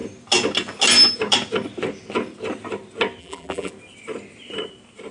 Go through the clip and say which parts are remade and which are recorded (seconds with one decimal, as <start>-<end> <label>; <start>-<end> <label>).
0.0-3.2 recorded; 3.2-3.7 remade; 3.7-5.1 recorded